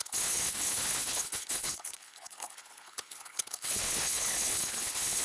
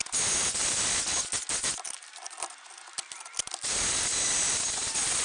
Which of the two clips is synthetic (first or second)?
first